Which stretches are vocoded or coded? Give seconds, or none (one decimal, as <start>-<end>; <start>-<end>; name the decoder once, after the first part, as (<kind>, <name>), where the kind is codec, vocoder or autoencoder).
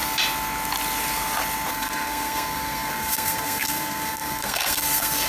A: 1.7-5.3 (codec, SNAC)